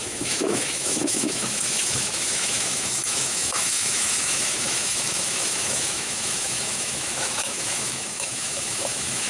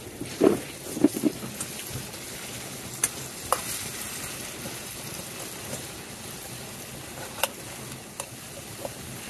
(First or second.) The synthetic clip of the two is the first